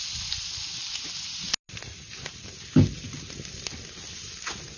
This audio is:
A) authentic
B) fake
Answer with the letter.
A